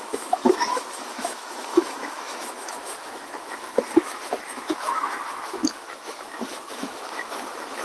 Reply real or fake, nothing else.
fake